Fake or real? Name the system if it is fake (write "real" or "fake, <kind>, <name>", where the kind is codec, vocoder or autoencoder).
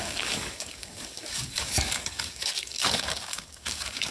fake, codec, DAC